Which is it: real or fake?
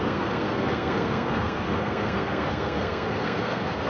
fake